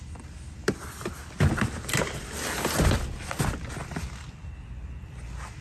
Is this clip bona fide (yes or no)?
yes